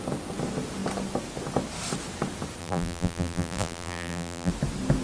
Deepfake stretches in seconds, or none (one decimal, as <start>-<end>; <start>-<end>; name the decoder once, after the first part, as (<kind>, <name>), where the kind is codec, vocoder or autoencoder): 2.6-4.5 (vocoder, BigVGAN v2)